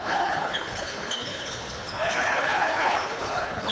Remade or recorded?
remade